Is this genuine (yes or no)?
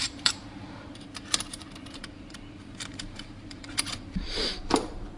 no